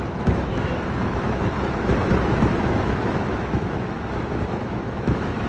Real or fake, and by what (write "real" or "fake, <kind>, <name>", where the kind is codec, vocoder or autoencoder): fake, autoencoder, DAC-VAE